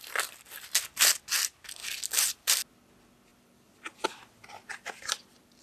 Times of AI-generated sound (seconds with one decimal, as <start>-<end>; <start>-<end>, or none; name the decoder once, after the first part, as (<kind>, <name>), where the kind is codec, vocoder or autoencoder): 1.8-2.5 (vocoder, BigVGAN v2); 3.3-5.6